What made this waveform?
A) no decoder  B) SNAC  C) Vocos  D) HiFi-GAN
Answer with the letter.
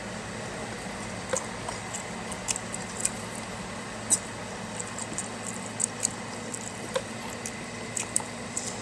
A